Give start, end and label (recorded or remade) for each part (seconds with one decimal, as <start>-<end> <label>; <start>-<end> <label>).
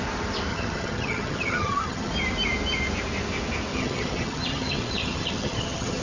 0.0-0.5 recorded; 0.5-2.1 remade; 2.1-3.7 recorded; 3.7-6.0 remade